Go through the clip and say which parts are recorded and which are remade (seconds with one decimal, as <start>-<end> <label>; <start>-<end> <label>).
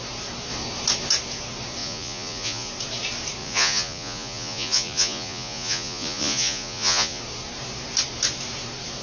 0.0-1.8 recorded; 1.8-2.7 remade; 2.7-3.4 recorded; 3.4-7.2 remade; 7.2-9.0 recorded